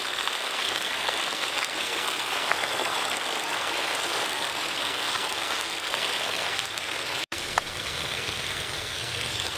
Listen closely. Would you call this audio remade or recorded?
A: remade